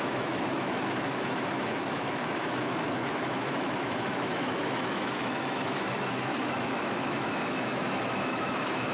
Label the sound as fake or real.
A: fake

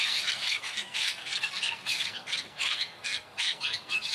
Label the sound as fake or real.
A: fake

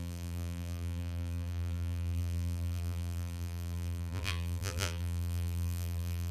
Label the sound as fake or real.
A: fake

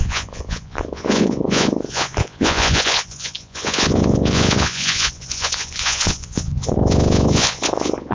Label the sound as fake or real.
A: fake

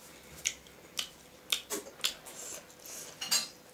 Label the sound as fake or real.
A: real